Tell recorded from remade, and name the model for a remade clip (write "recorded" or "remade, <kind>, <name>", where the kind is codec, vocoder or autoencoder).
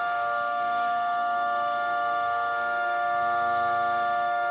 remade, autoencoder, DAC-VAE